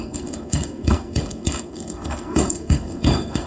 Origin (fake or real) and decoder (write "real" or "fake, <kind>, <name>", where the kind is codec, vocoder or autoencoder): fake, codec, SNAC